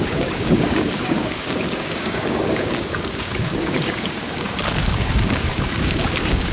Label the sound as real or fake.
fake